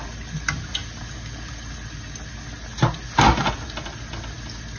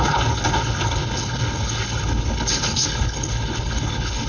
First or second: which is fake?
second